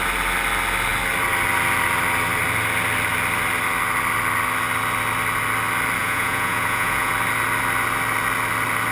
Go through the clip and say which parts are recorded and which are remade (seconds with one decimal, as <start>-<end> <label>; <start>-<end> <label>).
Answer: 0.0-6.0 recorded; 6.0-7.1 remade; 7.1-8.9 recorded